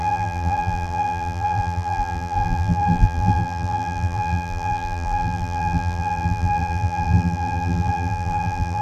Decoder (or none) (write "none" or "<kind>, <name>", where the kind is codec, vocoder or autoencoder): vocoder, BigVGAN v2